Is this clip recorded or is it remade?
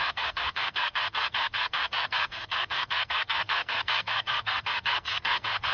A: remade